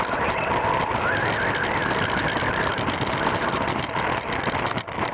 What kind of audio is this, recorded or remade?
recorded